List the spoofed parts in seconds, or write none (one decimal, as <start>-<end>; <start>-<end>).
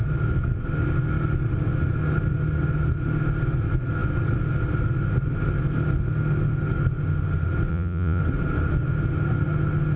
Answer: 7.7-8.2